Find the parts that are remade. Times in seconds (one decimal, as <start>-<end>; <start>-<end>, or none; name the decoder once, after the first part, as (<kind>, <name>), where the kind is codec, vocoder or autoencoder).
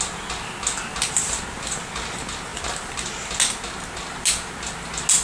none